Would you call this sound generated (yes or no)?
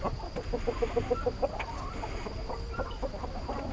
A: no